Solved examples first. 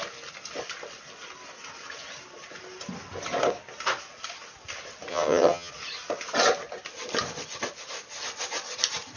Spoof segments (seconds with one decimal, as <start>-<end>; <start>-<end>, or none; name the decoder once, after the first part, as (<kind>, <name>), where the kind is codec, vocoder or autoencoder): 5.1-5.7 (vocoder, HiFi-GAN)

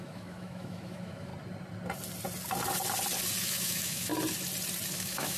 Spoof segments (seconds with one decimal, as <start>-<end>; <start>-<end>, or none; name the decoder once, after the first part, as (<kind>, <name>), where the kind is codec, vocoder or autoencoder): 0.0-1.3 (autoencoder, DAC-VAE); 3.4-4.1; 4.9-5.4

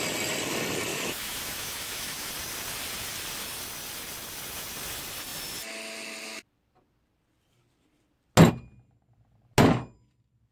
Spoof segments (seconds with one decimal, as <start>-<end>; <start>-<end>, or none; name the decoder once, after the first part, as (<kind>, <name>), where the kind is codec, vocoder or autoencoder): 0.9-2.3 (autoencoder, DAC-VAE)